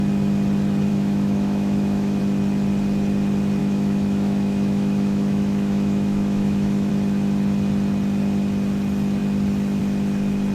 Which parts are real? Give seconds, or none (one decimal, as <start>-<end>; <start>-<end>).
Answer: 0.0-0.9; 2.2-3.6; 6.9-10.5